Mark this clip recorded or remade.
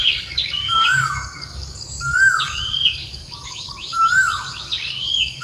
remade